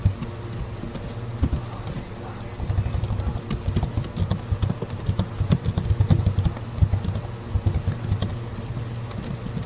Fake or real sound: real